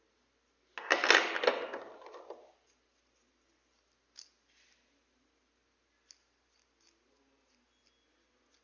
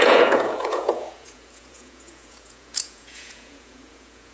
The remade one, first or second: second